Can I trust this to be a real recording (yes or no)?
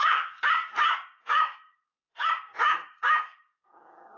no